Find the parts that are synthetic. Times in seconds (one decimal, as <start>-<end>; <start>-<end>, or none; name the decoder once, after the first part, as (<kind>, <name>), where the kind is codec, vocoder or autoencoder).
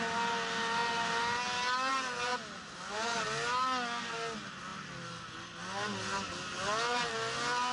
none